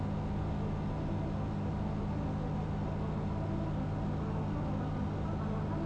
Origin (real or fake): real